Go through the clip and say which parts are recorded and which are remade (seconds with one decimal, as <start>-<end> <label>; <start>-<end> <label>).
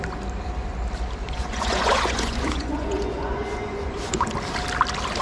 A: 0.0-1.2 recorded; 1.2-4.3 remade; 4.3-5.2 recorded